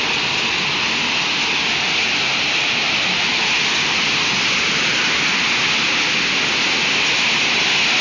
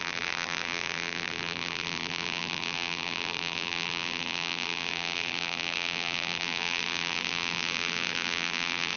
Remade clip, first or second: second